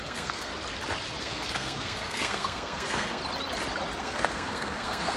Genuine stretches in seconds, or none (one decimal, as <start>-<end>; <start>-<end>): 0.5-1.2; 3.2-4.0